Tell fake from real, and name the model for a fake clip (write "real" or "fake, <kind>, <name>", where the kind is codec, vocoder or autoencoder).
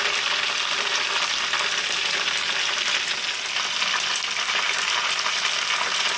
real